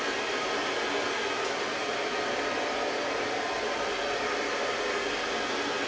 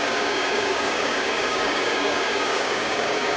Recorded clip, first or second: first